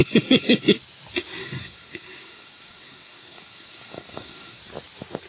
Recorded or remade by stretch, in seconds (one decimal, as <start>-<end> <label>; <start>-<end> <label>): 0.0-0.8 remade; 0.8-1.4 recorded; 1.4-4.6 remade; 4.6-5.3 recorded